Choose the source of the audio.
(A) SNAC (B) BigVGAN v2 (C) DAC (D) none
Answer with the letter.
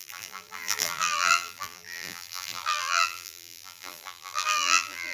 B